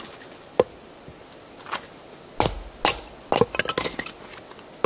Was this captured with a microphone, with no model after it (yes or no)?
yes